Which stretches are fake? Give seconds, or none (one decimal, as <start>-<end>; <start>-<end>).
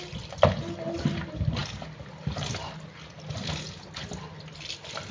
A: none